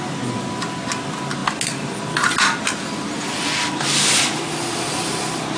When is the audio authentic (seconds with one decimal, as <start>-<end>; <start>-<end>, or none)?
0.0-5.6